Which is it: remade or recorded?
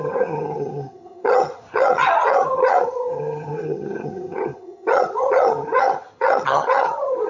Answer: remade